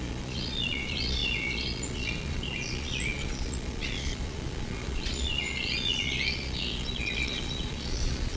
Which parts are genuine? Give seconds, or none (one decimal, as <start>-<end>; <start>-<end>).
none